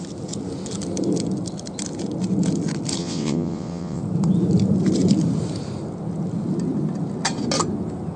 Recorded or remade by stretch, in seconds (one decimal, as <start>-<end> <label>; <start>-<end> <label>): 0.0-3.0 recorded; 3.0-4.0 remade; 4.0-8.2 recorded